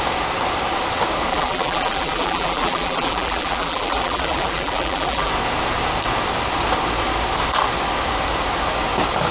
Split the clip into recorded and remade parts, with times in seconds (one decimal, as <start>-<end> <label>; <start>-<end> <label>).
0.0-1.3 recorded; 1.3-5.3 remade; 5.3-9.3 recorded